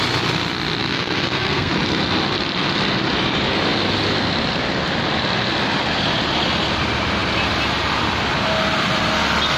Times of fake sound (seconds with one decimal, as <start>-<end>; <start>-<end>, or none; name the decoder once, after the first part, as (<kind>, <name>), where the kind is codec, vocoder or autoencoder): 0.8-1.7 (codec, SNAC)